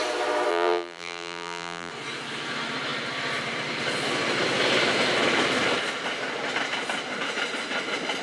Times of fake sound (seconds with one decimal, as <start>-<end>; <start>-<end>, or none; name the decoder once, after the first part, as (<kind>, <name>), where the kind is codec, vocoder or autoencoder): 0.5-1.9 (vocoder, BigVGAN v2)